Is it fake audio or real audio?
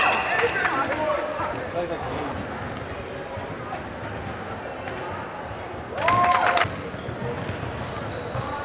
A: real